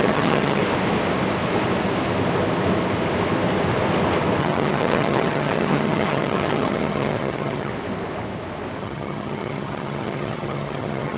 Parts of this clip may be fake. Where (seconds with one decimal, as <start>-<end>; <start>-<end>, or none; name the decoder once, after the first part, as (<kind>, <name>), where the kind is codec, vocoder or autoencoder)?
0.0-0.6 (vocoder, HiFi-GAN); 4.4-7.7; 8.8-11.2